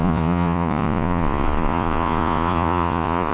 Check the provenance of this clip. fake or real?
fake